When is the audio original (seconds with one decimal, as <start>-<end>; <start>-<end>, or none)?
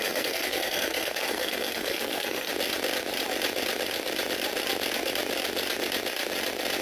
2.5-6.8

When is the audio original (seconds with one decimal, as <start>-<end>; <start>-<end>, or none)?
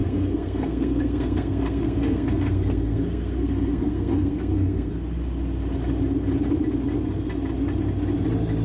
4.9-8.6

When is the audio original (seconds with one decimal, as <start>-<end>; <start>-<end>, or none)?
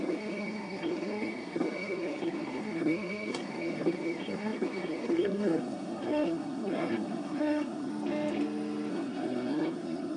7.9-8.9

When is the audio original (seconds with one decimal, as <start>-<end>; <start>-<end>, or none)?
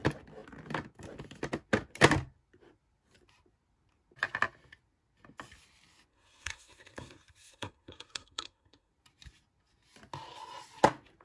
0.0-6.1; 8.9-11.2